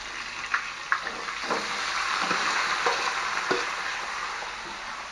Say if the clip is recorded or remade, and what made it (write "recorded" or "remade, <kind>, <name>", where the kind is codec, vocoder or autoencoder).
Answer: recorded